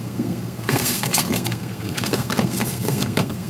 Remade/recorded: remade